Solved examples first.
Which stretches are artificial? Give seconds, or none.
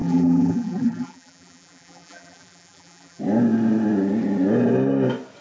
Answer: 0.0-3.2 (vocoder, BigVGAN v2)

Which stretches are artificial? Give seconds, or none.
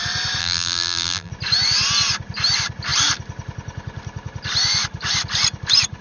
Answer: 0.4-1.3 (vocoder, BigVGAN v2)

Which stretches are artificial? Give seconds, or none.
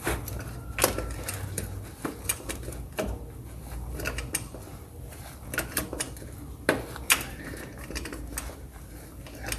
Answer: 4.7-5.2 (vocoder, BigVGAN v2)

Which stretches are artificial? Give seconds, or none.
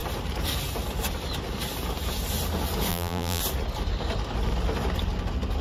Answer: 2.9-3.4 (vocoder, BigVGAN v2)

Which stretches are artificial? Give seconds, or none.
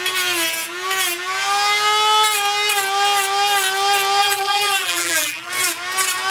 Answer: 4.2-5.5 (vocoder, BigVGAN v2)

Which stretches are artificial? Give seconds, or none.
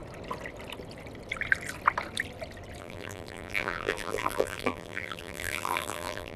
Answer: 2.8-6.4 (vocoder, BigVGAN v2)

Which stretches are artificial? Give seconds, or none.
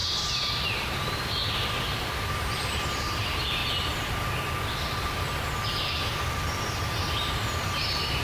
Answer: 0.7-3.6 (vocoder, BigVGAN v2); 7.5-8.2